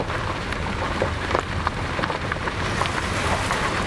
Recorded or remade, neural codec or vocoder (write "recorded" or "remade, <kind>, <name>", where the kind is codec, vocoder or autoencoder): remade, vocoder, BigVGAN v2